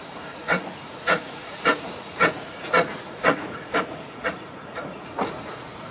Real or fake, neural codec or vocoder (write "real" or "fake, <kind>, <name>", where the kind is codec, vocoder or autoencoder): fake, vocoder, Vocos